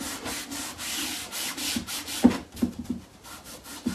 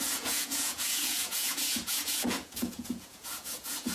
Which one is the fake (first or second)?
second